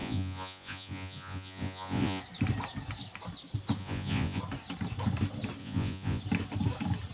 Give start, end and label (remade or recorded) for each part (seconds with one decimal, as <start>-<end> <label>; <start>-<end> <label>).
0.0-2.2 remade; 2.2-3.8 recorded; 3.8-4.4 remade; 4.4-5.6 recorded; 5.6-6.2 remade; 6.2-7.1 recorded